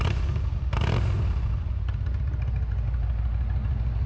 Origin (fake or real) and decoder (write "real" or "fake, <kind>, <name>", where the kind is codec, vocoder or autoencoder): real